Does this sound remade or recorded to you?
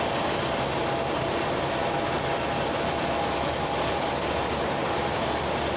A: recorded